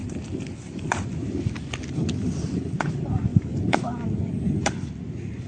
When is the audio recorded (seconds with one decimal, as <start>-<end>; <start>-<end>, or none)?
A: 0.0-3.3; 4.3-5.5